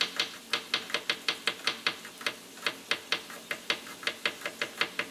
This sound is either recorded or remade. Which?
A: recorded